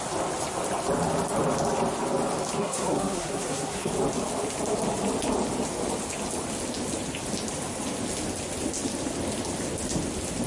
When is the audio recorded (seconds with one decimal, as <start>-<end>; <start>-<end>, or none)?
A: 0.0-2.6; 3.9-10.5